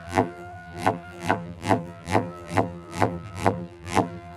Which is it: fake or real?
fake